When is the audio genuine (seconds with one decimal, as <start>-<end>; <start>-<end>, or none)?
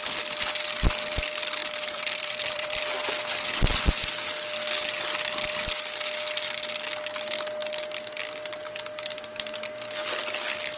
0.0-1.6; 2.8-10.8